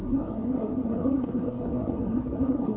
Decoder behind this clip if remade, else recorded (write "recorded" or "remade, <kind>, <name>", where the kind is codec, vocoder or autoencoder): remade, codec, SNAC